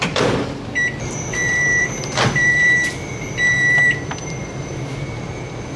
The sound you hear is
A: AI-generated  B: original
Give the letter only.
A